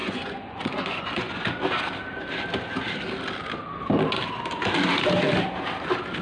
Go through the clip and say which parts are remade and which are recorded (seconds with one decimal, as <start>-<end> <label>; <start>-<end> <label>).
0.0-1.4 remade; 1.4-6.2 recorded